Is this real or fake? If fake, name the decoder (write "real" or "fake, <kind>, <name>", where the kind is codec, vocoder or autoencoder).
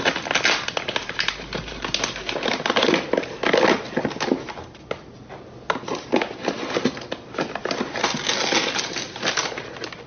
real